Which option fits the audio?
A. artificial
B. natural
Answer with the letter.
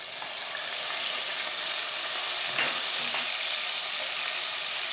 B